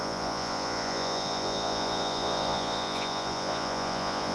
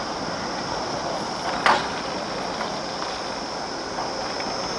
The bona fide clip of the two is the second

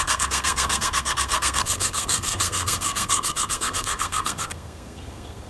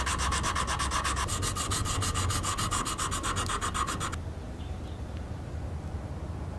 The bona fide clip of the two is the second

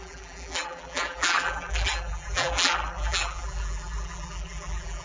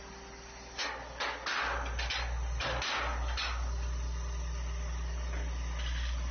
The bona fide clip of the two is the second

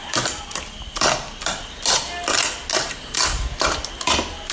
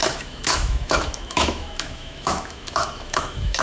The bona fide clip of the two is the first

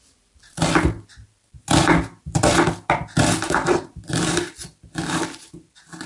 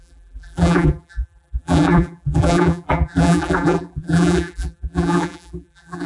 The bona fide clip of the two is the first